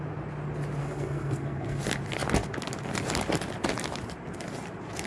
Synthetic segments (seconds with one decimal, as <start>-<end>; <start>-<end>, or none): 0.8-1.8